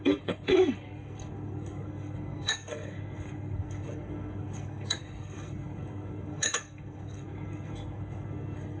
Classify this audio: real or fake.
fake